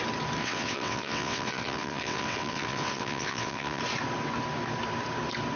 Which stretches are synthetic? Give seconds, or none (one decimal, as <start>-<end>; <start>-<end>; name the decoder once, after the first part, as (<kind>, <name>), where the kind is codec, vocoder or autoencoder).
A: 0.4-3.8 (vocoder, WaveNeXt)

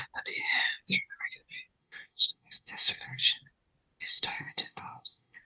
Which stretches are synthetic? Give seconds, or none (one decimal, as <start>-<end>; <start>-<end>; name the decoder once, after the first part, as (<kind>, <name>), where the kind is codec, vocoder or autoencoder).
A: 1.8-3.2 (codec, SNAC); 4.1-5.4

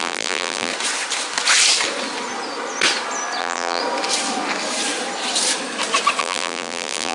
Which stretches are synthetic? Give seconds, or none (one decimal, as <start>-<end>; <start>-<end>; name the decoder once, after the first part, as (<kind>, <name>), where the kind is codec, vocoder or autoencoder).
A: 0.0-0.7 (vocoder, BigVGAN v2); 3.4-3.8; 6.2-7.1

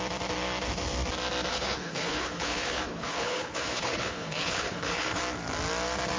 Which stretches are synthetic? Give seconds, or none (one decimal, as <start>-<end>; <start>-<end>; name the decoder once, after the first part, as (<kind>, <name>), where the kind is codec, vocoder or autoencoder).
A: 1.5-5.2 (codec, HILCodec)

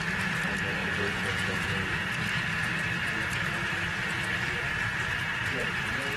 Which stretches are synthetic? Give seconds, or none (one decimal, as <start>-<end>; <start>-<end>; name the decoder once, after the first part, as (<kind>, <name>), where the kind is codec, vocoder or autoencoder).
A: 0.8-2.1 (vocoder, Vocos)

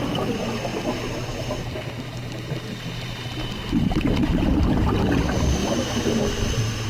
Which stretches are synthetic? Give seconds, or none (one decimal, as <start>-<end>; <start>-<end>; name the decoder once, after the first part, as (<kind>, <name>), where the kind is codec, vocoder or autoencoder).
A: none

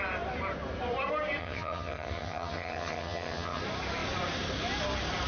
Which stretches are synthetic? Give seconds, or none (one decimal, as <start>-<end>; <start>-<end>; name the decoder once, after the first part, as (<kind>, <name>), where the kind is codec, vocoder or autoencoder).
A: 1.4-3.6 (vocoder, HiFi-GAN)